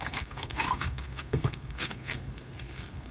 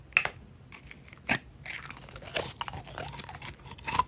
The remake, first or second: first